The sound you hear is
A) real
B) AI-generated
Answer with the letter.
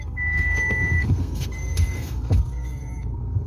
B